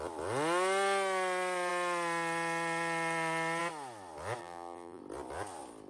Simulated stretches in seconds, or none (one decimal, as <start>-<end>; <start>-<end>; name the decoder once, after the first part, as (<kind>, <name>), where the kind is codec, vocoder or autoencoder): 4.4-5.0 (vocoder, BigVGAN v2)